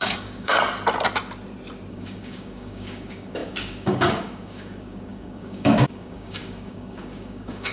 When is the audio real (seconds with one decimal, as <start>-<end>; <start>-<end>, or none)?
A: 0.5-1.9